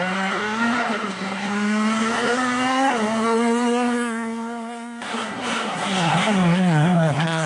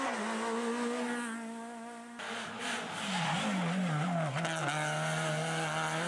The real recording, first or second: second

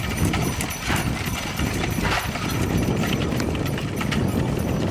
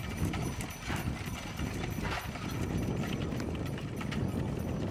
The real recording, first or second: second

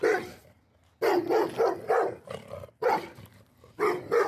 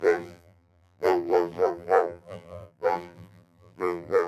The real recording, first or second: first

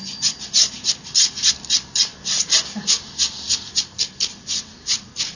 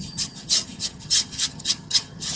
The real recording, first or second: first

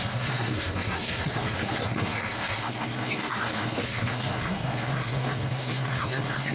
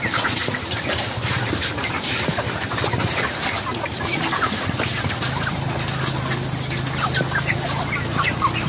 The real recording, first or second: second